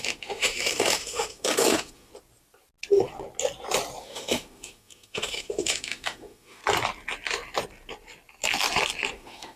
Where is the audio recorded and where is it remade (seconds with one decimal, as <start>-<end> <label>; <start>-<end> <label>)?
0.0-2.1 remade; 2.1-4.0 recorded; 4.0-6.6 remade; 6.6-9.1 recorded; 9.1-9.6 remade